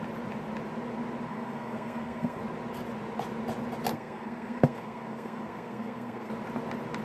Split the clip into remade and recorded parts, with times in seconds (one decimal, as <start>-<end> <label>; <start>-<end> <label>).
0.0-1.3 recorded; 1.3-2.4 remade; 2.4-3.9 recorded; 3.9-6.3 remade; 6.3-7.0 recorded